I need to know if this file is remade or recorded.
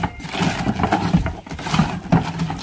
recorded